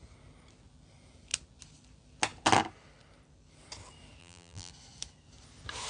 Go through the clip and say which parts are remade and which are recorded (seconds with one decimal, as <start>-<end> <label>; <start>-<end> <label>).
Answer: 0.0-4.2 recorded; 4.2-4.7 remade; 4.7-5.9 recorded